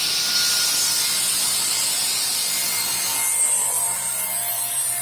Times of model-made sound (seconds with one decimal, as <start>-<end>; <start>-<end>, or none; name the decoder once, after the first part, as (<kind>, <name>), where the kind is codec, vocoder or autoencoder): 1.7-2.3 (vocoder, Vocos)